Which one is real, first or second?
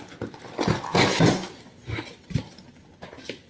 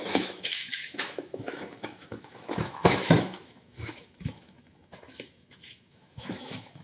first